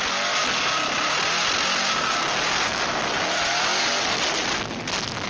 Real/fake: real